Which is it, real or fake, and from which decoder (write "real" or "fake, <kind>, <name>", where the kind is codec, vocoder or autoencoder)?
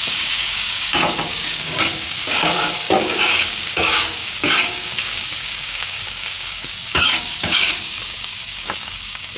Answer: fake, codec, DAC